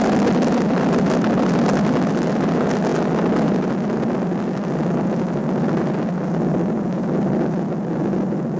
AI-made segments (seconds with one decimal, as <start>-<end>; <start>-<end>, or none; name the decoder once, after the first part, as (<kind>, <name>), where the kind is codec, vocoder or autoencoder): none